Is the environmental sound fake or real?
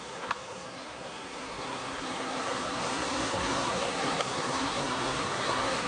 fake